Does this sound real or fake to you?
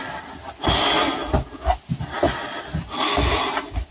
real